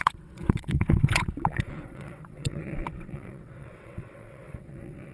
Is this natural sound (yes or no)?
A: no